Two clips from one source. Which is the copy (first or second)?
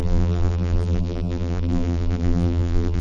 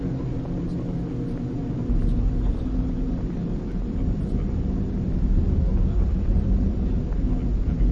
first